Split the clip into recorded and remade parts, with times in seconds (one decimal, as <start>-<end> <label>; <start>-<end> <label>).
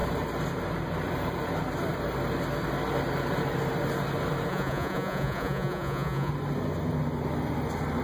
0.0-4.5 recorded; 4.5-6.3 remade; 6.3-8.0 recorded